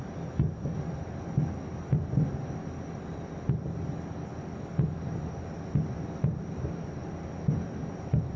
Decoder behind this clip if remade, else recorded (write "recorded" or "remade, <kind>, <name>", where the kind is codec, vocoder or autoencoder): recorded